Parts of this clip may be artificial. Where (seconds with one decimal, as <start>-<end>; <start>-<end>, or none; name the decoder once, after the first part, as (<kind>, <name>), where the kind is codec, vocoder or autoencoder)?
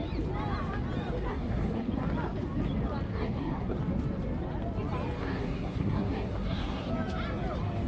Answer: 1.3-1.9 (codec, SNAC); 3.1-3.8; 5.2-6.9